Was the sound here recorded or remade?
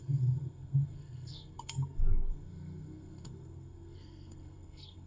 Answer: remade